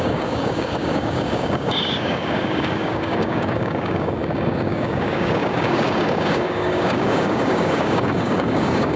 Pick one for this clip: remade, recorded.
remade